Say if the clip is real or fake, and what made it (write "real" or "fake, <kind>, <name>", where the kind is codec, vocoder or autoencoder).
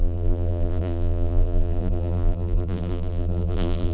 fake, vocoder, BigVGAN v2